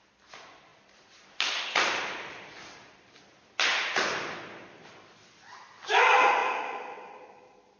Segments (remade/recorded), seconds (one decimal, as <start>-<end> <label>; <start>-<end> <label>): 0.0-0.7 recorded; 0.7-5.4 remade; 5.4-6.4 recorded; 6.4-7.3 remade; 7.3-7.8 recorded

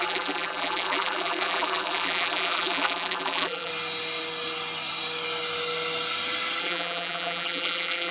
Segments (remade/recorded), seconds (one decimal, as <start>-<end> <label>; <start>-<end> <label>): 0.0-3.7 remade; 3.7-6.6 recorded; 6.6-8.1 remade

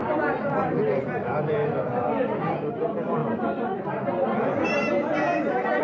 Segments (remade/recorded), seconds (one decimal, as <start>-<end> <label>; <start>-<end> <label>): 0.0-3.2 remade; 3.2-5.8 recorded

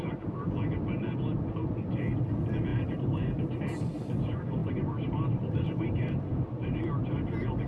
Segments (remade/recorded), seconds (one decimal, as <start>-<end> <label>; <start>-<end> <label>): 0.0-2.7 recorded; 2.7-3.4 remade; 3.4-4.6 recorded; 4.6-7.3 remade; 7.3-7.7 recorded

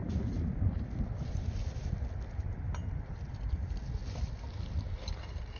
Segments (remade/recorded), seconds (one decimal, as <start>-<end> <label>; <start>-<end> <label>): 0.0-1.8 remade; 1.8-4.0 recorded; 4.0-4.5 remade; 4.5-5.6 recorded

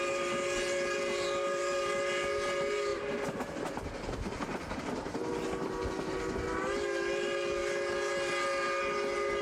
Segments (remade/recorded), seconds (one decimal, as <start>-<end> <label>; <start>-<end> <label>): 0.0-2.9 remade; 2.9-4.8 recorded; 4.8-7.6 remade; 7.6-8.8 recorded; 8.8-9.4 remade

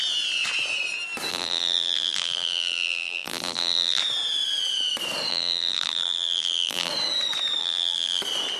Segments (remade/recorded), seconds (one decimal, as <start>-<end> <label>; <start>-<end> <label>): 0.0-1.3 recorded; 1.3-4.0 remade; 4.0-5.3 recorded; 5.3-6.9 remade; 6.9-7.6 recorded; 7.6-8.2 remade; 8.2-8.6 recorded